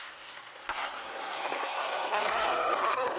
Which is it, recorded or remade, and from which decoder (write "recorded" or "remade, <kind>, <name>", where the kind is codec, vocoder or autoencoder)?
remade, codec, SNAC